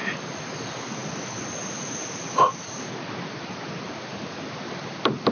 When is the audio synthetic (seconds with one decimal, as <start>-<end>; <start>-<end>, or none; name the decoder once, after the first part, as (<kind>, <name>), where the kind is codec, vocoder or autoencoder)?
none